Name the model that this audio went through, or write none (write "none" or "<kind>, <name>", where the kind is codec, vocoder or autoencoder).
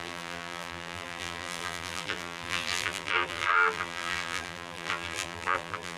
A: vocoder, BigVGAN v2